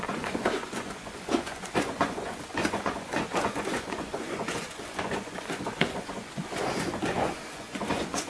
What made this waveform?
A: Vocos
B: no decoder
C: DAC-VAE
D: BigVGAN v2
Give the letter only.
A